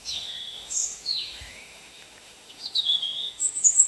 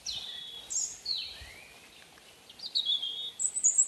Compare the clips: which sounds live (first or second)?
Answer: second